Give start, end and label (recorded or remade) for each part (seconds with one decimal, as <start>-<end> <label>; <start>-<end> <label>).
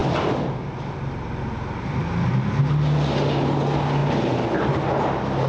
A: 0.0-5.5 recorded